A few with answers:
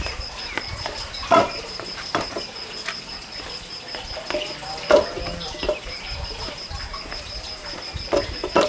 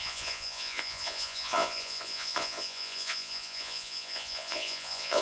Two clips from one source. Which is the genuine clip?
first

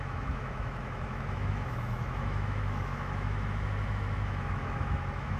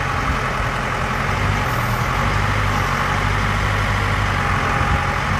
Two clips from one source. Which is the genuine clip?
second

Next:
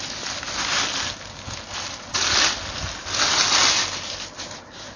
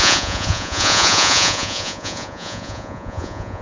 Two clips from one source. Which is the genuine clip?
first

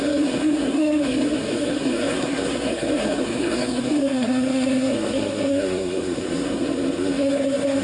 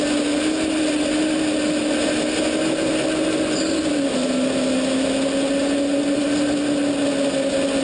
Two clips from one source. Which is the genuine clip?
second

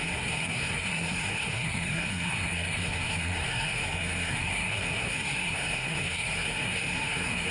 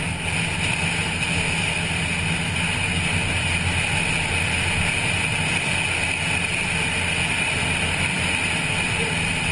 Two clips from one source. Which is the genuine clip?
second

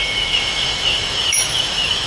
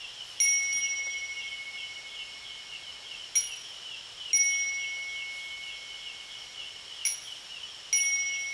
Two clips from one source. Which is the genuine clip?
second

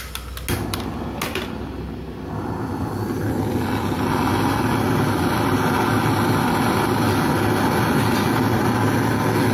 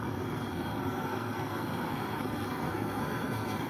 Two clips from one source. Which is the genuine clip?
first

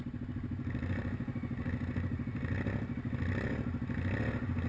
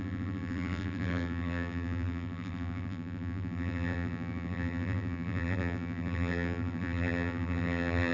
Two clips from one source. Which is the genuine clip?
first